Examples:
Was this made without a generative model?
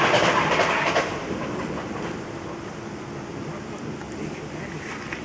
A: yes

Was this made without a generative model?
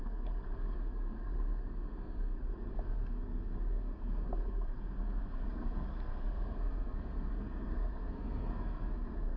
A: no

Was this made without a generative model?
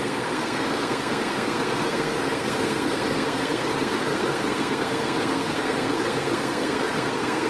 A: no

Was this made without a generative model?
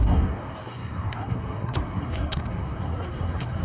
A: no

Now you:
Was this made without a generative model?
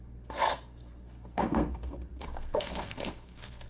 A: no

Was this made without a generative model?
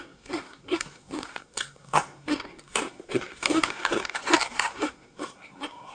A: no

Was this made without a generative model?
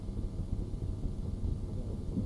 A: yes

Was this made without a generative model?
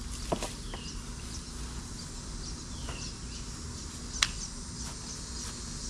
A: yes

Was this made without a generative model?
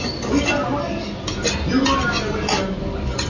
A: yes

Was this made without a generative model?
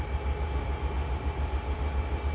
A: yes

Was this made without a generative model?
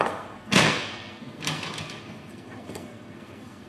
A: no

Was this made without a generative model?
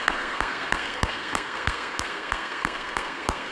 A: no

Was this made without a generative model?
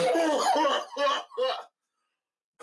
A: yes